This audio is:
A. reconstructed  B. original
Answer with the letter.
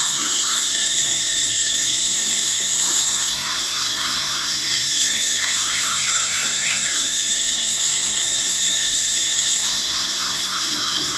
A